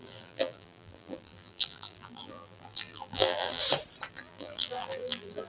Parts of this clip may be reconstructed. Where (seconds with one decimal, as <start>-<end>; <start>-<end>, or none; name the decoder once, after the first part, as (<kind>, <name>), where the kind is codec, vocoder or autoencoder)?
0.0-3.6 (vocoder, BigVGAN v2); 4.1-5.5